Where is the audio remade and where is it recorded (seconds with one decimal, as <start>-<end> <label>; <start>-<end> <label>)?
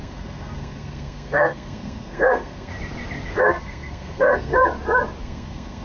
0.0-2.7 remade; 2.7-3.4 recorded; 3.4-4.6 remade; 4.6-5.2 recorded; 5.2-5.8 remade